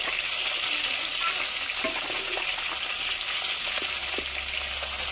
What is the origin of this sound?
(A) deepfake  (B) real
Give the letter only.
B